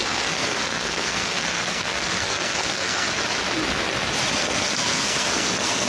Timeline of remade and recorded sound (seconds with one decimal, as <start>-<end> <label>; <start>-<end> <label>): 0.0-3.2 remade; 3.2-4.4 recorded; 4.4-5.9 remade